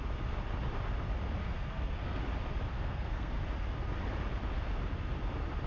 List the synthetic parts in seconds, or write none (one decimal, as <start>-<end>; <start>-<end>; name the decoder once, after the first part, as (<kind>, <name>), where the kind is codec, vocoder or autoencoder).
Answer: 1.4-2.2 (codec, SNAC); 2.7-3.3